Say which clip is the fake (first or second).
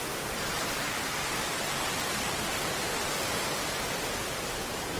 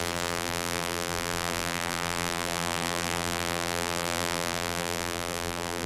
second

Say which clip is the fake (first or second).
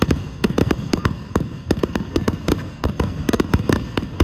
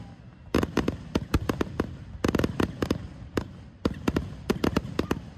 first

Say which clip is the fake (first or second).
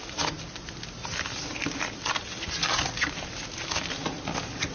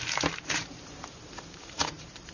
second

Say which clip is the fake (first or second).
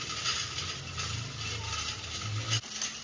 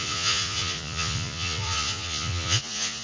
second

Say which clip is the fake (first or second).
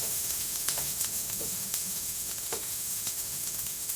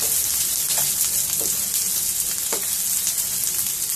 first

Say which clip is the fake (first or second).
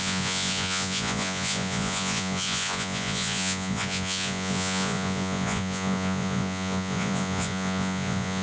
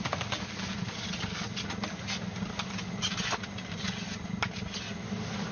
first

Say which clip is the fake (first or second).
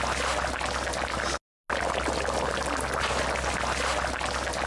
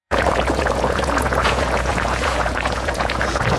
second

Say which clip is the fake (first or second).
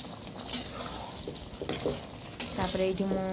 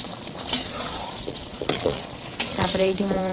second